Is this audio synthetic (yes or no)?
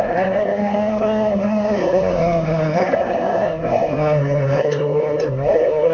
yes